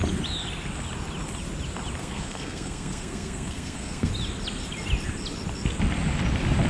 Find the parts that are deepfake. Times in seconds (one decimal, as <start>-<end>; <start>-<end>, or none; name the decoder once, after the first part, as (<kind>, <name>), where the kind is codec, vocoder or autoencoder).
2.0-4.1 (codec, SNAC)